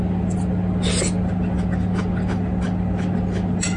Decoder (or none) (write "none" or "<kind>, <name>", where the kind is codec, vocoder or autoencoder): none